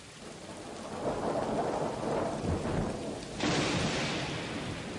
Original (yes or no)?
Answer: yes